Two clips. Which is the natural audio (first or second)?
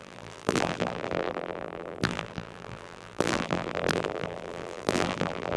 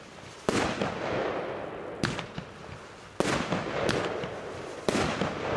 second